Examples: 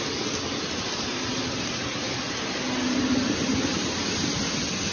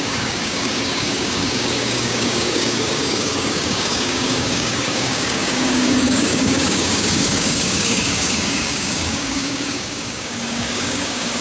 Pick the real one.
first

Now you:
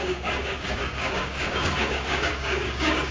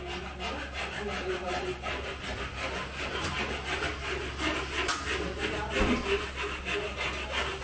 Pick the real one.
second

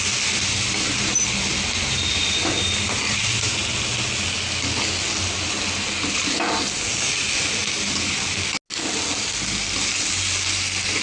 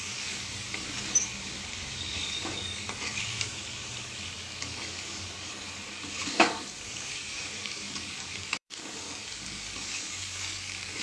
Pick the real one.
first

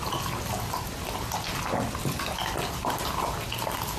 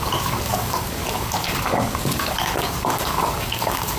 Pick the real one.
first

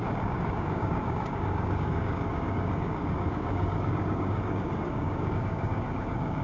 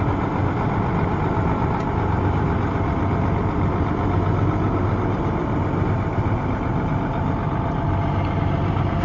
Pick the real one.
second